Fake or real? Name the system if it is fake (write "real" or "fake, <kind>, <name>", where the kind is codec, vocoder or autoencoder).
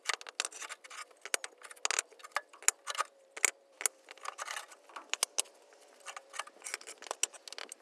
real